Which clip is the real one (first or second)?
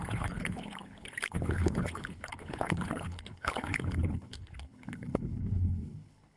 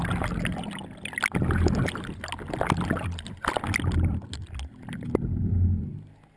second